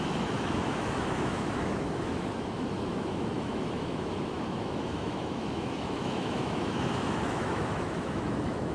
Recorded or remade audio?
remade